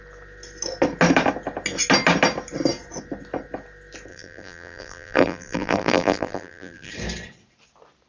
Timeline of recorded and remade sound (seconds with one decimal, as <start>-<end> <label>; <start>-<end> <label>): 0.0-4.1 recorded; 4.1-6.9 remade; 6.9-8.1 recorded